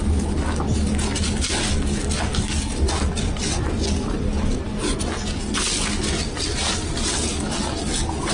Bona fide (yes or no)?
yes